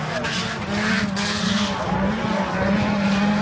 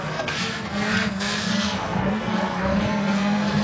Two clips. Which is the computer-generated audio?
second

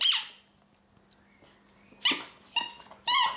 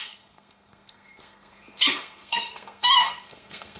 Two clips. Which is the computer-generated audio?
second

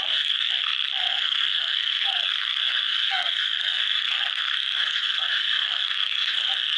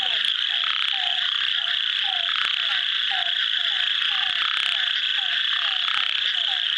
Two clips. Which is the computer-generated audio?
first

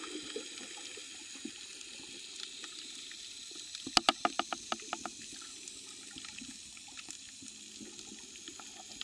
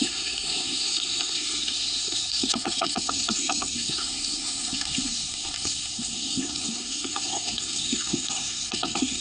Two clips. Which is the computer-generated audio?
second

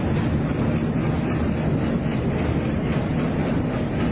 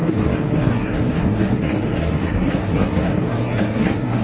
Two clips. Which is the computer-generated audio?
second